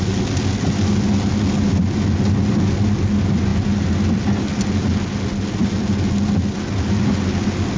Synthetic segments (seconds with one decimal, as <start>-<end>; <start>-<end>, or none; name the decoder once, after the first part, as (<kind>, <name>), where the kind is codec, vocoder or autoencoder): none